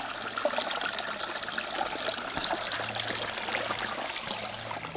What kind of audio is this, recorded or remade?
recorded